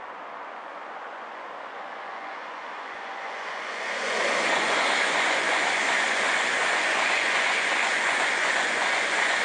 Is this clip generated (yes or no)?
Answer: yes